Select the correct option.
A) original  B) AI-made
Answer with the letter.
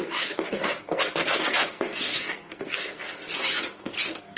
B